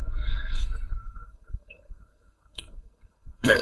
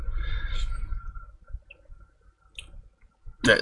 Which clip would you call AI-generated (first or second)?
first